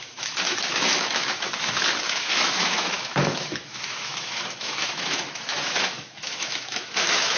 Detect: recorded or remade remade